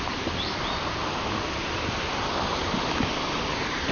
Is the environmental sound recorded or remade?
recorded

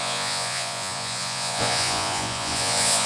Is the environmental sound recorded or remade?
remade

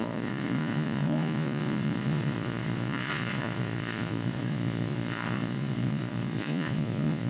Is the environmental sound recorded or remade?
remade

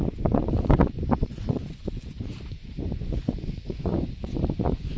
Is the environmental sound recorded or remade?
remade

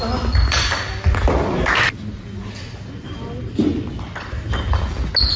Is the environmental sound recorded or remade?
recorded